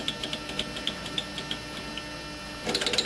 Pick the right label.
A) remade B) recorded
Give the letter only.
B